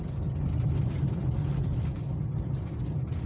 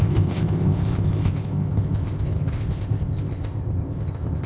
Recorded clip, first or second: first